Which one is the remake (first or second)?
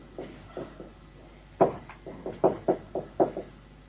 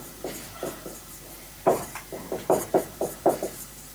second